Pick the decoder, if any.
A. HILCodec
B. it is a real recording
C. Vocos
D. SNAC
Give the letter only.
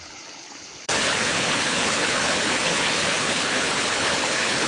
A